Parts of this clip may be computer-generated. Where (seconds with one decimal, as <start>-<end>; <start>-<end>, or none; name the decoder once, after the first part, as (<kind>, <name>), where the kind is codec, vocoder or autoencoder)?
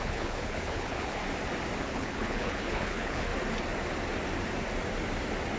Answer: 0.0-1.2 (codec, HILCodec); 1.8-3.3